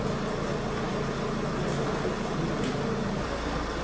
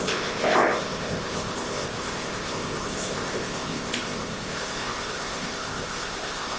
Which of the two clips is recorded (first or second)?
first